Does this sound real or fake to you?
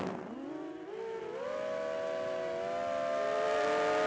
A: real